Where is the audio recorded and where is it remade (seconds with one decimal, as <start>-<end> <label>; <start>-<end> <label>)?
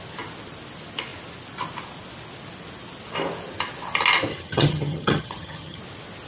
0.0-4.3 recorded; 4.3-5.8 remade; 5.8-6.3 recorded